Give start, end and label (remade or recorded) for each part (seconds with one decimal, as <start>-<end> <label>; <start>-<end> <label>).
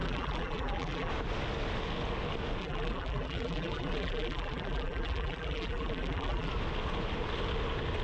0.0-1.1 remade; 1.1-2.6 recorded; 2.6-6.5 remade; 6.5-8.0 recorded